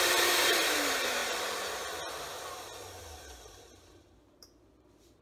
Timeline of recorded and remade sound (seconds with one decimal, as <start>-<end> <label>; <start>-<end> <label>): 0.0-1.2 remade; 1.2-3.0 recorded; 3.0-5.2 remade